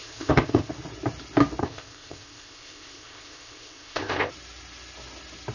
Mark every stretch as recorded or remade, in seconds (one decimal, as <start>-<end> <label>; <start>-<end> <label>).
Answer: 0.0-0.7 remade; 0.7-1.6 recorded; 1.6-4.3 remade; 4.3-5.5 recorded

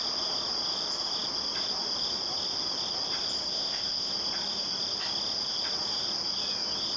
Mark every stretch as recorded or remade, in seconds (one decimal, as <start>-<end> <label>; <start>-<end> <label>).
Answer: 0.0-3.5 recorded; 3.5-4.1 remade; 4.1-7.0 recorded

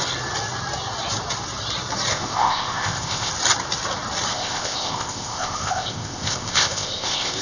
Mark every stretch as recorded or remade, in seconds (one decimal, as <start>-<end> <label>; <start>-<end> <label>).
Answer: 0.0-2.1 recorded; 2.1-3.3 remade; 3.3-4.3 recorded; 4.3-7.4 remade

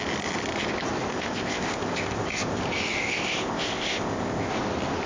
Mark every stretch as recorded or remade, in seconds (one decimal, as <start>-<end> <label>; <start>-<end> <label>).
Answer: 0.0-1.1 recorded; 1.1-2.6 remade; 2.6-3.0 recorded; 3.0-4.5 remade; 4.5-5.1 recorded

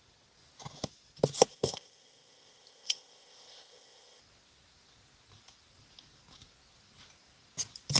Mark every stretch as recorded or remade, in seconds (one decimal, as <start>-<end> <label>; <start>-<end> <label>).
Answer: 0.0-1.5 recorded; 1.5-4.2 remade; 4.2-8.0 recorded

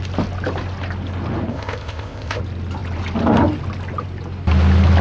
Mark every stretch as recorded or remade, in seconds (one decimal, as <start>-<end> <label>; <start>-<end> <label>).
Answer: 0.0-1.5 recorded; 1.5-2.4 remade; 2.4-5.0 recorded